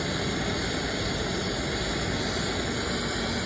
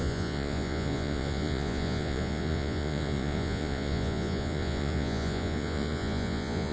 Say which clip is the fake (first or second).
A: second